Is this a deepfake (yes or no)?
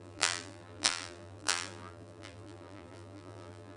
yes